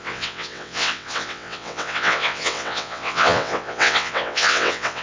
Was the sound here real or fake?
fake